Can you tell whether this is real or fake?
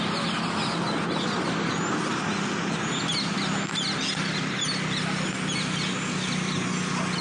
real